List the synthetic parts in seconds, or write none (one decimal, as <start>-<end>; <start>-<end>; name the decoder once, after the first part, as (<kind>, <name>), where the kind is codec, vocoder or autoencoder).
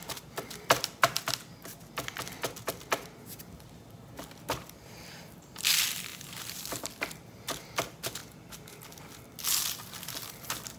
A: 6.1-6.6 (vocoder, BigVGAN v2)